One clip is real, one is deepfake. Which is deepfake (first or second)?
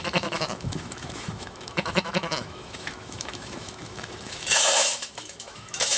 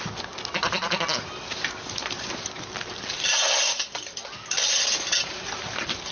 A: first